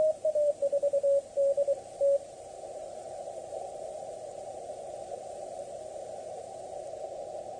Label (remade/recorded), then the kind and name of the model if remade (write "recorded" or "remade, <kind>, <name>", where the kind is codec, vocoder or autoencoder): remade, vocoder, BigVGAN v2